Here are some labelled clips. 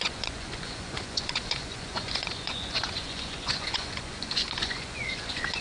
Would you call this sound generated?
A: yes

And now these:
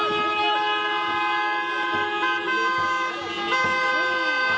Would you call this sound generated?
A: no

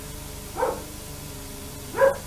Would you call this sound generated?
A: no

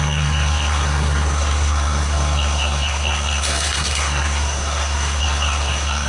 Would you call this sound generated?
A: yes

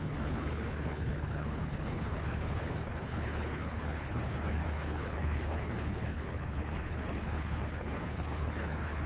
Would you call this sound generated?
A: yes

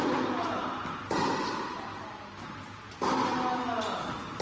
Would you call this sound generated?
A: no